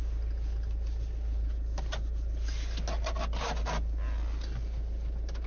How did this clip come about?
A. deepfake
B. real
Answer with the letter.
B